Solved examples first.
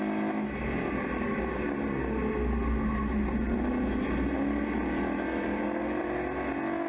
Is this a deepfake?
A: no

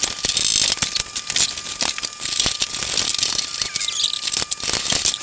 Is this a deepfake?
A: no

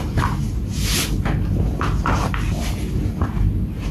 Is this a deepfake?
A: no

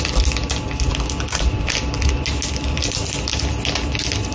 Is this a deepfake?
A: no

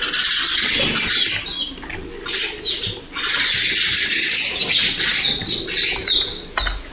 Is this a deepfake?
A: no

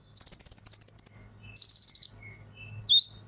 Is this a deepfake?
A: no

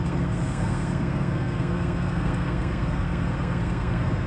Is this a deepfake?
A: yes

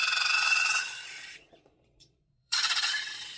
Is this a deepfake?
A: yes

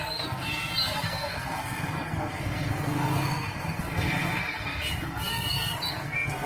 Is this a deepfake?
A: yes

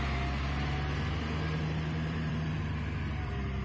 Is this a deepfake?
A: yes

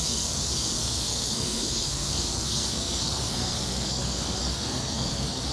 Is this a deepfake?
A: yes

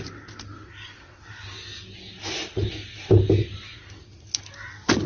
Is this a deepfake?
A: no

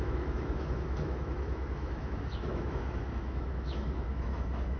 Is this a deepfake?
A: yes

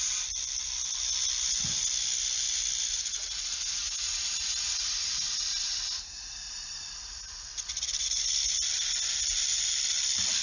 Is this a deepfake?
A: no